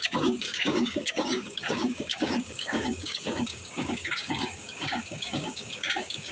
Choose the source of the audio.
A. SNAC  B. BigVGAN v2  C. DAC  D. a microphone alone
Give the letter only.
C